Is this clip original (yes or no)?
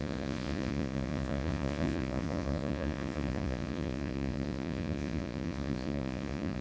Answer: no